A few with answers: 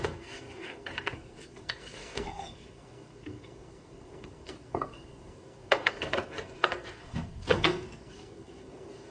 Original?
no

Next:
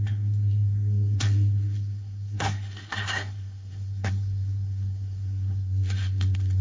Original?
no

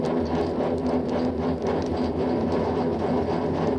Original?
yes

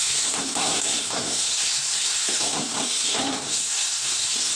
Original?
no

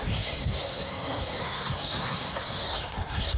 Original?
no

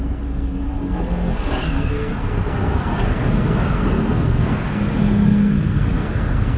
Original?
no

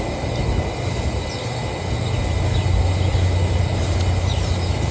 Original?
yes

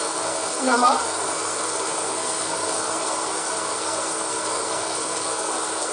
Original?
no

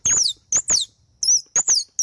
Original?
yes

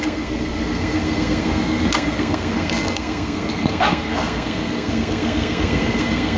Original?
no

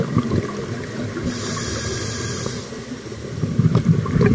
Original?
yes